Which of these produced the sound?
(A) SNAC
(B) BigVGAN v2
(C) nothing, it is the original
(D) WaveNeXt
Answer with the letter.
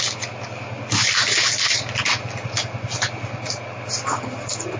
C